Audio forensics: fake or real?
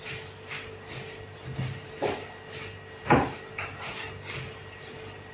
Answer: real